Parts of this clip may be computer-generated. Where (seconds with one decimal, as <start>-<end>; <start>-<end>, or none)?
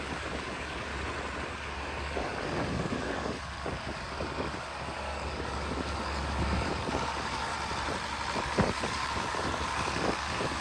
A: 0.0-0.9; 1.5-7.5; 8.4-10.6